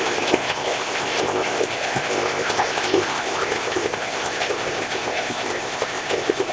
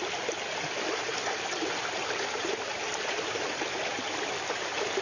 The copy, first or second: first